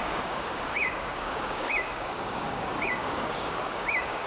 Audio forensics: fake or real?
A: fake